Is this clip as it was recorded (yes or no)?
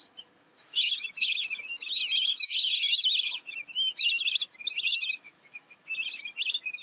no